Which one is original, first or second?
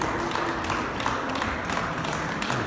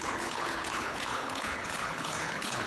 first